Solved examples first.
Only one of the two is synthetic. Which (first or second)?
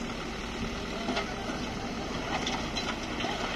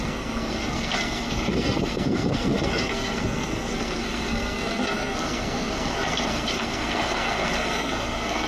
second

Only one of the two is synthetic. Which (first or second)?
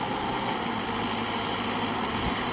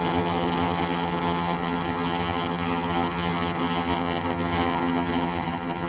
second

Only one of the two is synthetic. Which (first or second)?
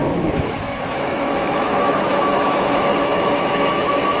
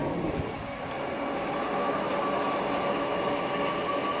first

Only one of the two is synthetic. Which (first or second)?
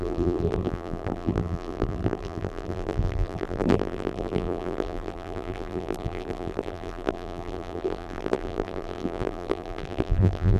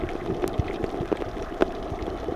first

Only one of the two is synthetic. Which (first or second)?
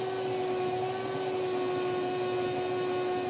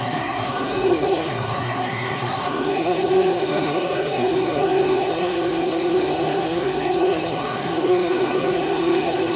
second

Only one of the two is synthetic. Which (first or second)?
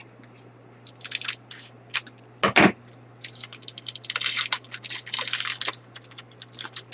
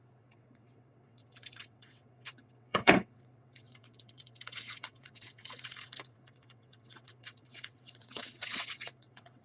second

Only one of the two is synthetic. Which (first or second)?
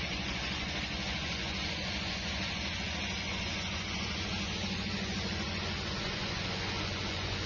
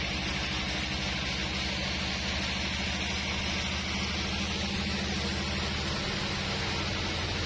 first